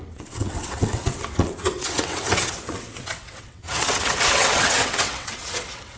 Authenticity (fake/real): fake